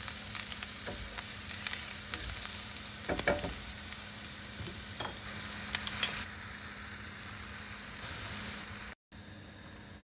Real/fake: real